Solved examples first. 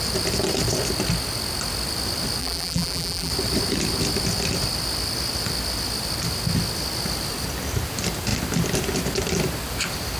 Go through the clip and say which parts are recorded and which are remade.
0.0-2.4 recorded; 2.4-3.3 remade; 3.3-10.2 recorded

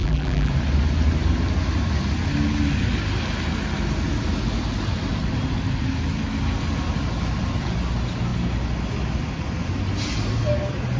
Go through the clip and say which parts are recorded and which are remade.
0.0-0.5 remade; 0.5-11.0 recorded

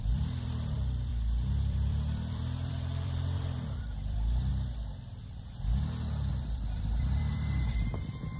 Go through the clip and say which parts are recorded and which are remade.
0.0-1.1 remade; 1.1-1.6 recorded; 1.6-4.5 remade; 4.5-6.3 recorded; 6.3-8.4 remade

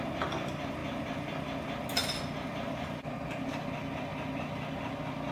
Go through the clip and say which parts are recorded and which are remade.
0.0-5.3 recorded

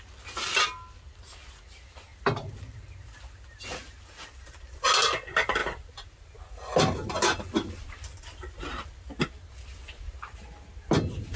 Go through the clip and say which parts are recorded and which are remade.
0.0-11.4 recorded

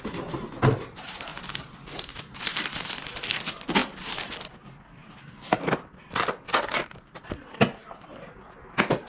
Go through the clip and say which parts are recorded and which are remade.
0.0-3.8 recorded; 3.8-4.5 remade; 4.5-5.0 recorded; 5.0-5.7 remade; 5.7-9.1 recorded

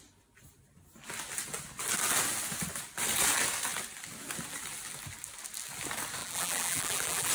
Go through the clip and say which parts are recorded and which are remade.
0.0-6.2 recorded; 6.2-7.3 remade

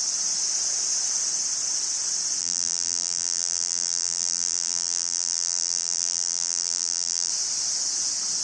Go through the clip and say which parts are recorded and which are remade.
0.0-2.4 recorded; 2.4-7.3 remade; 7.3-8.4 recorded